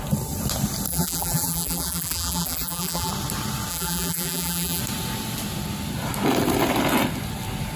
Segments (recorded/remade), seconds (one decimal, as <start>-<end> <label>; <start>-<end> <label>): 0.0-0.9 recorded; 0.9-3.1 remade; 3.1-3.7 recorded; 3.7-4.8 remade; 4.8-7.8 recorded